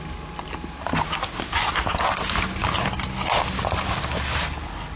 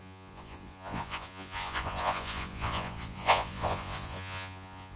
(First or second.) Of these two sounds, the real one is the first